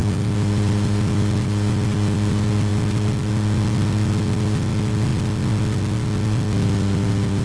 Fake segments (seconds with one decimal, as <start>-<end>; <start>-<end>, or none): none